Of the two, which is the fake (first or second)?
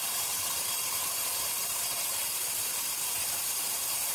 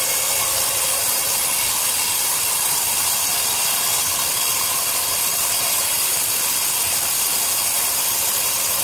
first